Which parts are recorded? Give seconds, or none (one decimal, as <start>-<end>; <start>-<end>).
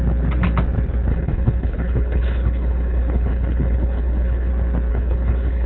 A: 0.0-1.1; 4.5-4.9